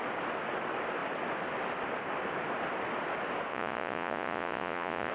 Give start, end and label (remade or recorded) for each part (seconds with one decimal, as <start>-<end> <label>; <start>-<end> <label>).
0.0-3.5 recorded; 3.5-5.1 remade